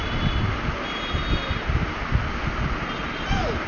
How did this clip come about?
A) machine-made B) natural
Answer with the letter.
B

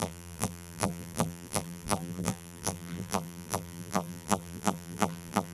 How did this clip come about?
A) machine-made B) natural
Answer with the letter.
A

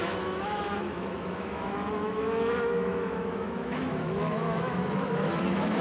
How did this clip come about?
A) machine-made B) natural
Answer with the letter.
A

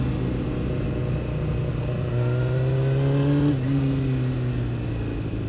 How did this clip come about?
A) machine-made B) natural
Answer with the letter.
B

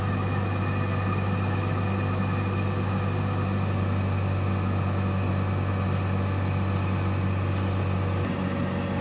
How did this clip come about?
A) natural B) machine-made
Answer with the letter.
A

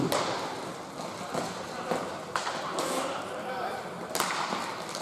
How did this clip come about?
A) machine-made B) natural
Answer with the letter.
B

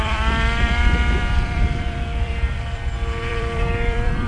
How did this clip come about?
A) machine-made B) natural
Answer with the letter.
A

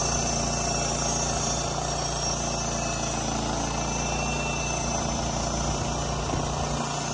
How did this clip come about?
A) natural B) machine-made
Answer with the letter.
A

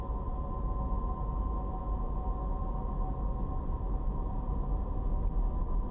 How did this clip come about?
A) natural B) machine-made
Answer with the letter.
A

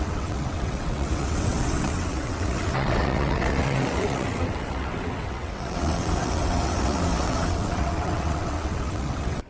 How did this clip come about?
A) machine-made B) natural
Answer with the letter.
A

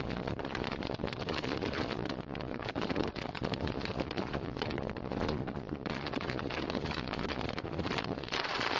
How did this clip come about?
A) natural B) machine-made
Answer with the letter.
B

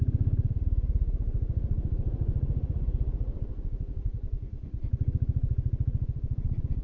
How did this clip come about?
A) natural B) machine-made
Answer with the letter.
B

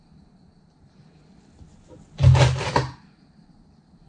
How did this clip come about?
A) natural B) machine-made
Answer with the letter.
A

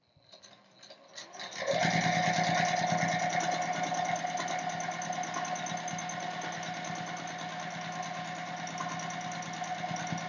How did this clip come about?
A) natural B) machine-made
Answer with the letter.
A